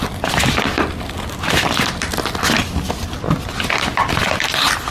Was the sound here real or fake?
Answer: real